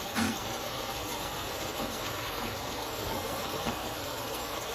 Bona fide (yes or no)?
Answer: no